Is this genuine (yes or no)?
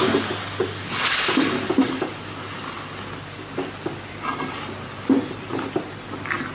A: yes